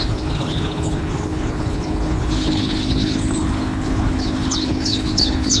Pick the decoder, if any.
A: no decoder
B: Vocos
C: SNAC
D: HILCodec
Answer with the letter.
D